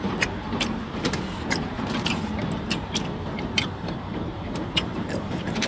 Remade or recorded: remade